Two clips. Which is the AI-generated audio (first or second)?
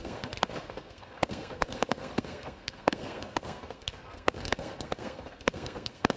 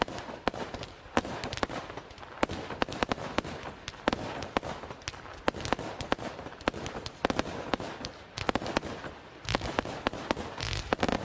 first